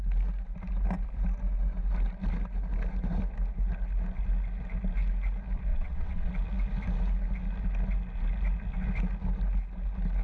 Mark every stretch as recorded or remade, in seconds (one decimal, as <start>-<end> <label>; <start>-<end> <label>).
0.0-5.7 recorded; 5.7-6.3 remade; 6.3-10.2 recorded